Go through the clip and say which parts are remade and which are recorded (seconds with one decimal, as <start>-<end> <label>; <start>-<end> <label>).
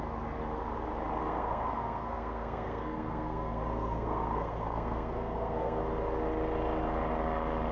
0.0-1.2 recorded; 1.2-5.8 remade; 5.8-7.7 recorded